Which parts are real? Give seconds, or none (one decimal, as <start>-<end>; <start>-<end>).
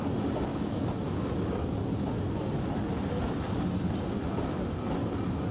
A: 0.0-5.5